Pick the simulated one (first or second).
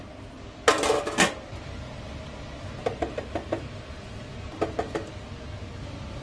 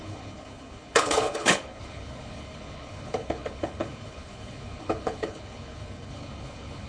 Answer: second